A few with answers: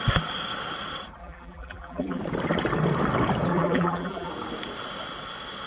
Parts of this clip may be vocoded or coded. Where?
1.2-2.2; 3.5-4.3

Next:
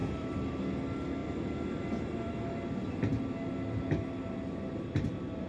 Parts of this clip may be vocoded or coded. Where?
0.0-0.6; 1.2-2.3

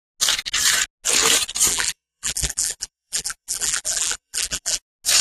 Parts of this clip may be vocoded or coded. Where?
1.7-4.8